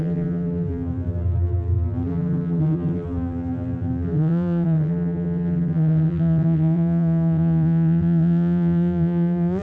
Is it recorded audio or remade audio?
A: remade